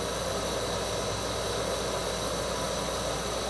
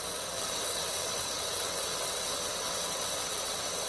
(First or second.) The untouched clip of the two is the first